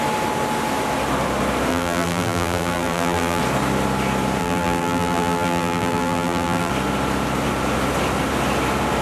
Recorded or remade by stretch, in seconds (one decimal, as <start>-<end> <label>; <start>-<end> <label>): 0.0-1.7 recorded; 1.7-3.4 remade; 3.4-4.4 recorded; 4.4-6.7 remade; 6.7-9.0 recorded